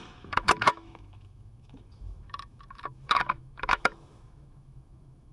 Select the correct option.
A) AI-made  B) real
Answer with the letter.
A